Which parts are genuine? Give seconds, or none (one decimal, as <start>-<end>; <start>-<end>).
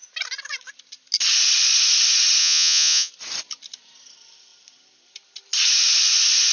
0.0-2.4; 3.1-6.5